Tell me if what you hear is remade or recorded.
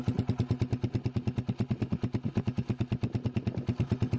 recorded